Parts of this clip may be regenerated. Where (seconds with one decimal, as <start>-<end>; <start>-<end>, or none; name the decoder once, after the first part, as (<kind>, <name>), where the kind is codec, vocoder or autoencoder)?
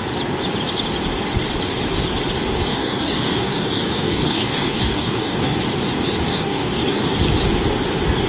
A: 2.7-5.6 (codec, DAC); 6.3-7.0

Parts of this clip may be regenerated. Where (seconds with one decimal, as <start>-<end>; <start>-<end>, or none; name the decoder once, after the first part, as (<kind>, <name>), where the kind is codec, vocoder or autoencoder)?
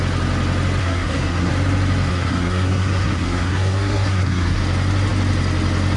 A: 0.8-1.5 (codec, SNAC); 2.1-4.6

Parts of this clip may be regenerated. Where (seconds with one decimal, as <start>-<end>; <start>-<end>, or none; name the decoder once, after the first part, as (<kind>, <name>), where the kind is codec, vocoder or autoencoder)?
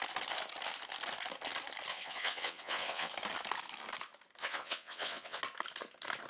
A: 1.9-3.1 (vocoder, WaveNeXt); 4.4-5.4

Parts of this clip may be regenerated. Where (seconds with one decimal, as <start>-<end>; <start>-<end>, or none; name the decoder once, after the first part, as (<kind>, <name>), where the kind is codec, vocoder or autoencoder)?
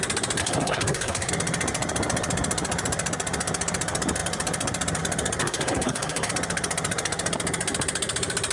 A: 0.4-1.3 (codec, SNAC); 5.4-6.3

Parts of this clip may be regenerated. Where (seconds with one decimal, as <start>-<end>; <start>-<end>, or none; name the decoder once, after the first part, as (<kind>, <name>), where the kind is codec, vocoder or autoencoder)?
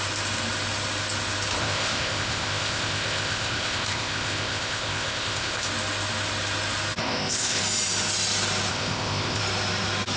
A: 1.6-5.7 (codec, ZipCodec); 7.0-7.6; 8.7-9.4